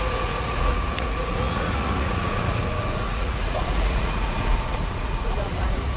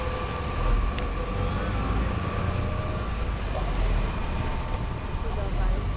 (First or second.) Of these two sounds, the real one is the second